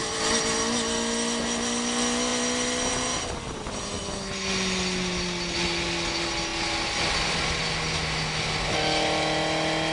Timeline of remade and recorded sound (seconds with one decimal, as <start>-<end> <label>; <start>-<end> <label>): 0.0-9.9 recorded